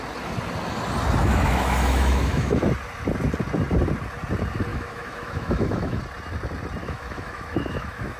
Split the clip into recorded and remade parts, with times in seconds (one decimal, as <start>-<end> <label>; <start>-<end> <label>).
0.0-1.2 recorded; 1.2-2.6 remade; 2.6-4.7 recorded; 4.7-6.0 remade; 6.0-6.8 recorded; 6.8-8.2 remade